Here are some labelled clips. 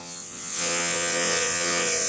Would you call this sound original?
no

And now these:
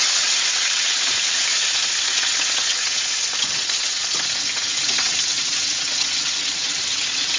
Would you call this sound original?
no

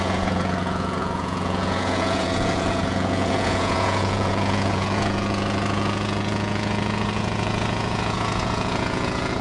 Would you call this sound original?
no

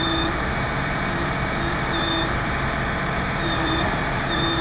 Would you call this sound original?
no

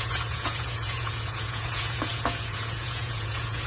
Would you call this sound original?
no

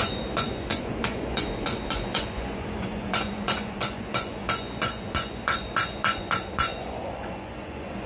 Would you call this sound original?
no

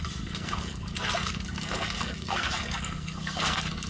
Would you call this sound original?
no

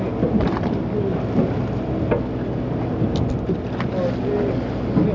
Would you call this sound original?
yes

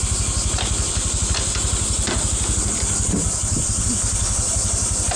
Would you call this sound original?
yes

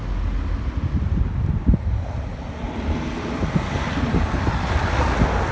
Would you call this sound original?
yes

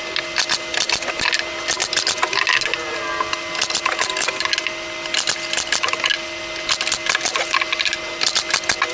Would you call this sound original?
yes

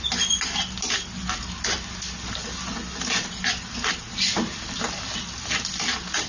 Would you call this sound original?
yes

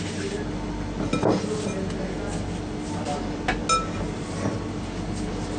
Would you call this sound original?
yes